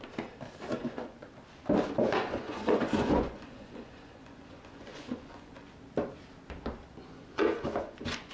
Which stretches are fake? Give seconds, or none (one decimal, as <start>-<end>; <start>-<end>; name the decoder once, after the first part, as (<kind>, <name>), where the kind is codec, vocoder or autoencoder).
0.8-1.3 (vocoder, Vocos); 2.0-5.7; 6.9-8.3